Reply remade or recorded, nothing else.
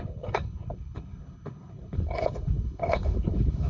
remade